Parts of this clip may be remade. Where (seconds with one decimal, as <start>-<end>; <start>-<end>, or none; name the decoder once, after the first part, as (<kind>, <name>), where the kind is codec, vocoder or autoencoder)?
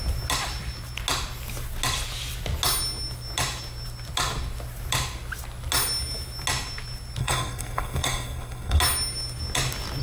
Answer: 7.2-8.8 (codec, SNAC)